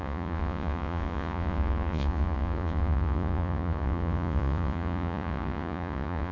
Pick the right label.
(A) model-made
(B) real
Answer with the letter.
A